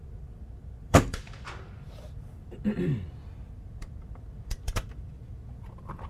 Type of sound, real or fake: fake